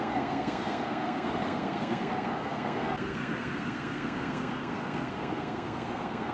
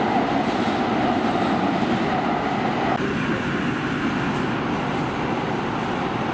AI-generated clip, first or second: first